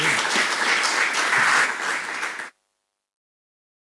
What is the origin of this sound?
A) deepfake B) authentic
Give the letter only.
B